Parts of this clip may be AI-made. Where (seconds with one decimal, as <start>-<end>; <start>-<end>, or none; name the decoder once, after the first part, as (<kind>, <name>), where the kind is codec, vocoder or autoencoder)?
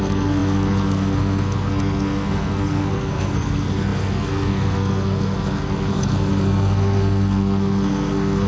0.0-8.5 (codec, SNAC)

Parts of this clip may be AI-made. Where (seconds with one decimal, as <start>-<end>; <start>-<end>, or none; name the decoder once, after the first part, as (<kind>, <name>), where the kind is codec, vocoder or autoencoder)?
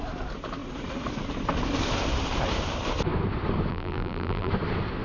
3.7-4.5 (vocoder, BigVGAN v2)